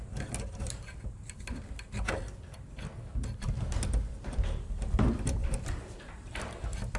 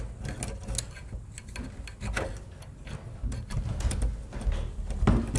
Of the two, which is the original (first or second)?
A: second